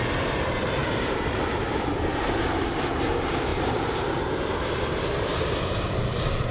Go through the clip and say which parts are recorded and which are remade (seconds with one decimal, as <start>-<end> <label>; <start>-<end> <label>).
0.0-0.8 recorded; 0.8-2.4 remade; 2.4-3.5 recorded; 3.5-4.6 remade; 4.6-5.3 recorded; 5.3-6.0 remade; 6.0-6.5 recorded